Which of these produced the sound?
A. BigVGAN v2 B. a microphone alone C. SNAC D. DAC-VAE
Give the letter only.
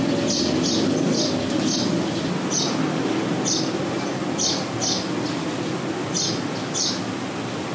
B